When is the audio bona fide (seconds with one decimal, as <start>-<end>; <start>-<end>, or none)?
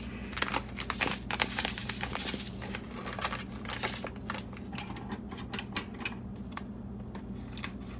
0.0-8.0